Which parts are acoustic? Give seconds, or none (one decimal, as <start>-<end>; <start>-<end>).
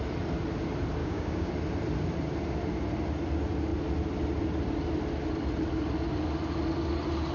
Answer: 0.0-1.0; 1.5-7.3